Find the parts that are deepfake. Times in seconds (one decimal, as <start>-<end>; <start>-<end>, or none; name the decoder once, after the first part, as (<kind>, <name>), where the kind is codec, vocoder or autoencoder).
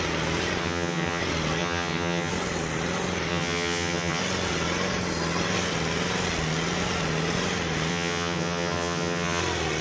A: 0.6-1.2 (vocoder, HiFi-GAN); 1.6-2.3; 3.3-4.2; 7.9-9.4